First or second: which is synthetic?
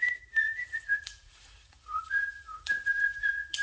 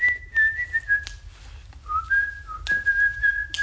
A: first